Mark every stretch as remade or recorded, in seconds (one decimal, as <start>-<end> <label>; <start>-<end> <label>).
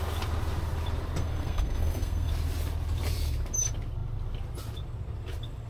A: 0.0-1.2 recorded; 1.2-2.3 remade; 2.3-5.7 recorded